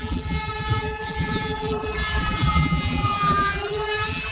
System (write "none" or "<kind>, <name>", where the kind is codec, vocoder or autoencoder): vocoder, BigVGAN v2